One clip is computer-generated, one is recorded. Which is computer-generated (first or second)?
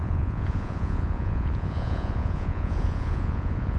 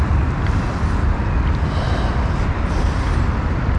first